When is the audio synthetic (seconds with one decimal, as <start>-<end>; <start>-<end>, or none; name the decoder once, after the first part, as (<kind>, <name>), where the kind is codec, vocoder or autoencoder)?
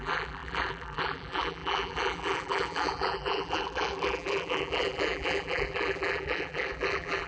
0.0-7.3 (vocoder, BigVGAN v2)